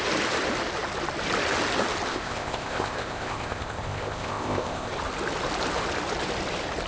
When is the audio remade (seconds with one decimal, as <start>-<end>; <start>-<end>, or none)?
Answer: 2.1-4.9